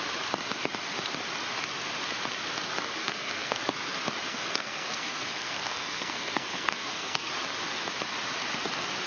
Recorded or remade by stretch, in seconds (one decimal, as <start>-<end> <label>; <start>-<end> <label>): 0.0-3.0 recorded; 3.0-3.6 remade; 3.6-4.3 recorded; 4.3-7.3 remade; 7.3-9.1 recorded